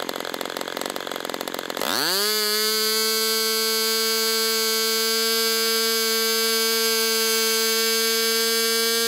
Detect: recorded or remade recorded